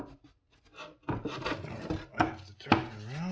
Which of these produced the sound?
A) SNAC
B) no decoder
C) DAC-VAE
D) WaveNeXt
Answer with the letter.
B